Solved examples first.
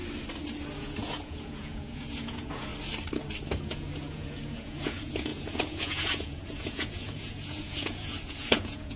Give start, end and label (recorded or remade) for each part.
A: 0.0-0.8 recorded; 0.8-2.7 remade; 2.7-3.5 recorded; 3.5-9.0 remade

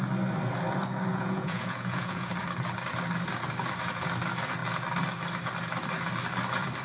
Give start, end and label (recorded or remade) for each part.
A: 0.0-1.1 recorded; 1.1-2.3 remade; 2.3-6.8 recorded